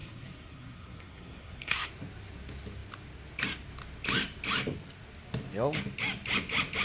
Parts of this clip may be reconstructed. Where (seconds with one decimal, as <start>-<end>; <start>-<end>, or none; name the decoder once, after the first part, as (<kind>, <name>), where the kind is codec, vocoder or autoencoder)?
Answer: 0.0-1.9 (codec, SNAC)